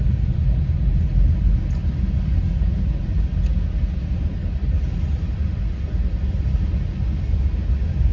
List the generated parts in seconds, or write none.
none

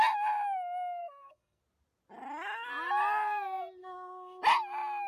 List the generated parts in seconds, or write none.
1.0-1.6; 3.8-4.4

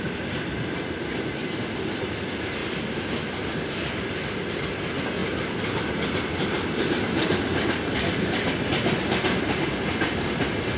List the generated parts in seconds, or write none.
none